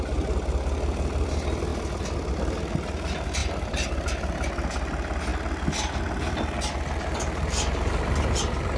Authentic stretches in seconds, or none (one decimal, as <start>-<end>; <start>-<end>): 0.0-8.8